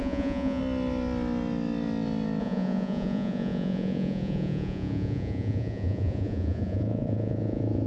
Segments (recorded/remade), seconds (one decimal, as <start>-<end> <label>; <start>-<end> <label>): 0.0-0.6 remade; 0.6-2.4 recorded; 2.4-7.9 remade